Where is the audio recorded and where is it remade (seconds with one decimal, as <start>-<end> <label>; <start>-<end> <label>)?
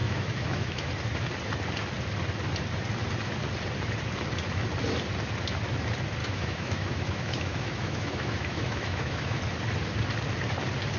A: 0.0-0.9 remade; 0.9-6.2 recorded; 6.2-9.4 remade; 9.4-11.0 recorded